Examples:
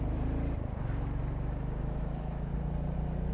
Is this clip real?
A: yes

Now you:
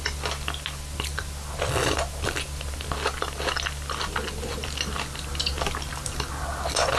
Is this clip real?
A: yes